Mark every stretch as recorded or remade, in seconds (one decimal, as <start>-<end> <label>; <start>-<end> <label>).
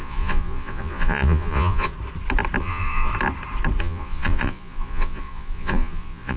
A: 0.0-1.9 remade; 1.9-2.6 recorded; 2.6-3.1 remade; 3.1-3.8 recorded; 3.8-6.4 remade